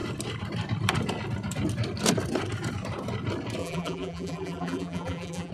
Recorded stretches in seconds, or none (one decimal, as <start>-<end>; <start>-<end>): 0.0-3.6

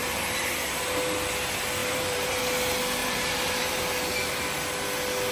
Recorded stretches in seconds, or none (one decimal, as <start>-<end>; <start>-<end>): 0.5-1.8; 2.4-3.0; 3.8-5.3

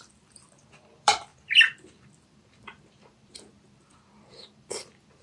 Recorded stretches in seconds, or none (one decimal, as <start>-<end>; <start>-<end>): none

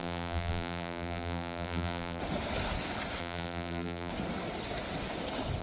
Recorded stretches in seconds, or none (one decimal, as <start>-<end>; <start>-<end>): 2.2-3.2; 4.1-5.6

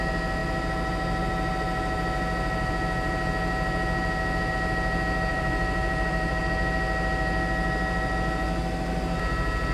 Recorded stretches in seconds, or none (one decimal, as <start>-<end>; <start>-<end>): 0.0-5.3; 6.4-9.7